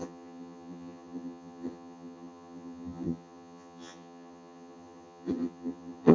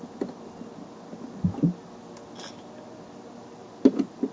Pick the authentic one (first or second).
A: second